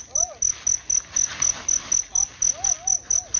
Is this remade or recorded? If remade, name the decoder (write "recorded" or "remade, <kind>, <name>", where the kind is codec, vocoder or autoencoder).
recorded